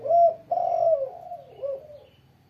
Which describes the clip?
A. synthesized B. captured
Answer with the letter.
B